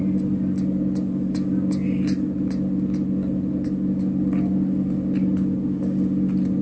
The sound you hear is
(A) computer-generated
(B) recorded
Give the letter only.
B